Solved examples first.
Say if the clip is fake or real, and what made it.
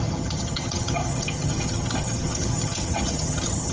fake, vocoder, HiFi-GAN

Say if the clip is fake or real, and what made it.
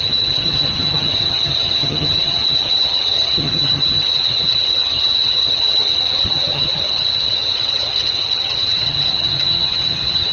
fake, vocoder, HiFi-GAN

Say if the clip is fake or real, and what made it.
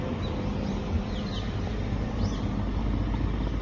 real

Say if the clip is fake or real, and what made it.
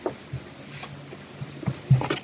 real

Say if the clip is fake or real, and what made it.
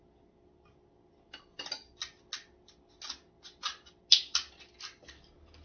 real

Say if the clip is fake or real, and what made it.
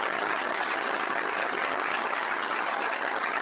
fake, vocoder, HiFi-GAN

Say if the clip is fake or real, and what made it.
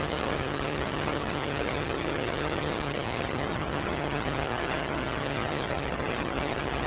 fake, vocoder, HiFi-GAN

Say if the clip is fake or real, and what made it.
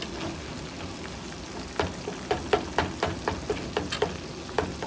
real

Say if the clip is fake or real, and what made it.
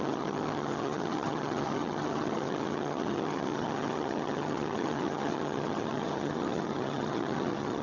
fake, vocoder, HiFi-GAN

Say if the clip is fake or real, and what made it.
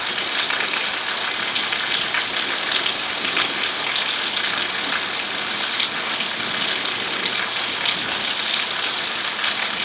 real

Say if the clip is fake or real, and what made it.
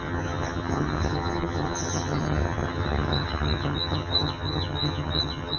fake, vocoder, HiFi-GAN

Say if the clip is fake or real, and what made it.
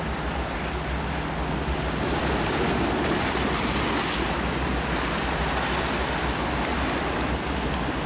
real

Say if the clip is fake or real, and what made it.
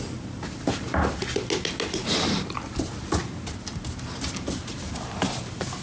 real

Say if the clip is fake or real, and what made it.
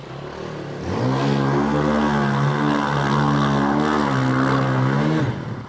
real